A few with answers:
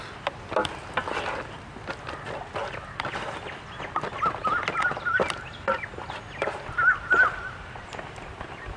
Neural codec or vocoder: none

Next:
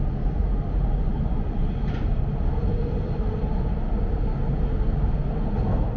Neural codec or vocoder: none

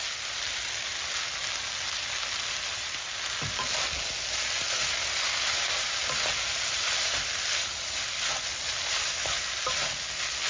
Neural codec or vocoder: none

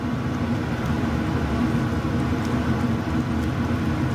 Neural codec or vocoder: none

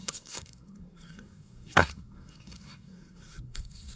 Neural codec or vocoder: codec, SNAC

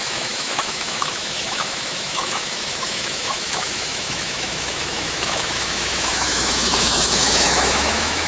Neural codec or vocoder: autoencoder, DAC-VAE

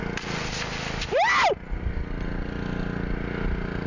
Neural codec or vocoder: none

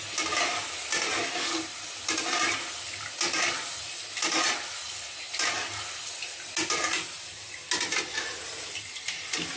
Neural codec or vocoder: none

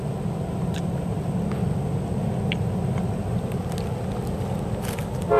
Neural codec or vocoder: none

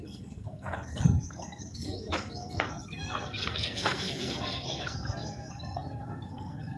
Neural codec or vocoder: codec, SNAC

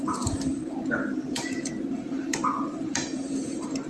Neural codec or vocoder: vocoder, BigVGAN v2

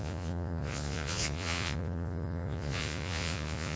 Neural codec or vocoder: vocoder, Vocos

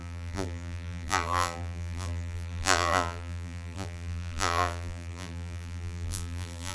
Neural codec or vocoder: vocoder, BigVGAN v2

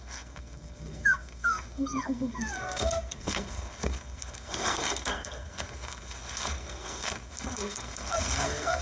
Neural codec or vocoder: codec, SNAC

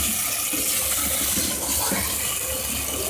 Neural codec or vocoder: none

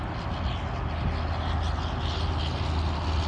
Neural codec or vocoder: none